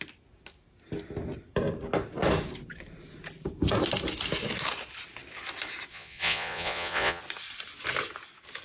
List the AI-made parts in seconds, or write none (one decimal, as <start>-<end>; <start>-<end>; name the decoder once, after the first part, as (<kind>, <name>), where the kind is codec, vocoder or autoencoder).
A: 5.9-7.2 (vocoder, Vocos)